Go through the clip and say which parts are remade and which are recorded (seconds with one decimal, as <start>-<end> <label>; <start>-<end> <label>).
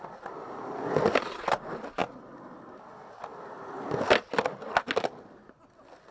0.0-6.1 recorded